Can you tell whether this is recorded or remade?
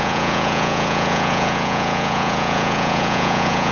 remade